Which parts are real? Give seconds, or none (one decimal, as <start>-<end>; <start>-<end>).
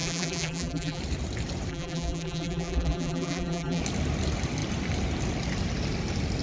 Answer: 1.0-1.7; 3.8-6.4